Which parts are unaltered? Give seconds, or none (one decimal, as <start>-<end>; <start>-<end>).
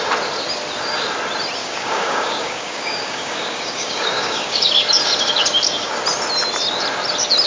0.0-1.6; 4.7-7.5